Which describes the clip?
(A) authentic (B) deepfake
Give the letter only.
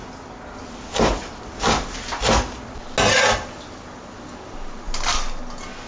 A